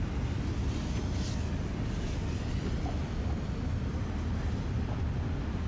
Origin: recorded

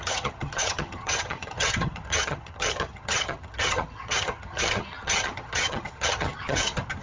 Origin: remade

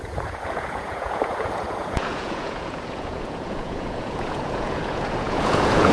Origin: remade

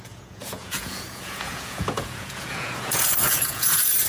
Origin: remade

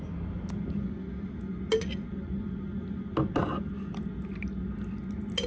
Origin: recorded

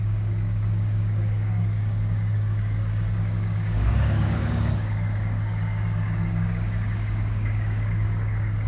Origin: remade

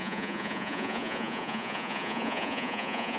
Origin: remade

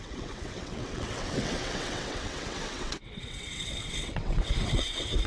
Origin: remade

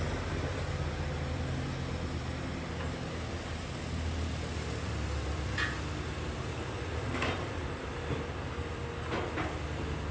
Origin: recorded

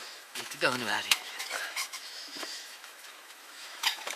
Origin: remade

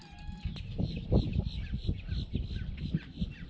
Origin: recorded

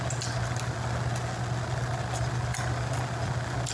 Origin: recorded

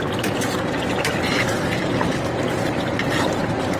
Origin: recorded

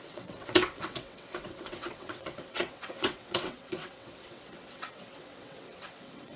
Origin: remade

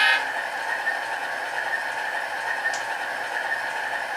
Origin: recorded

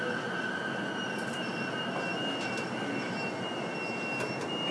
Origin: recorded